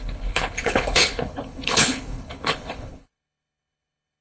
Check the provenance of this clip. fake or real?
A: fake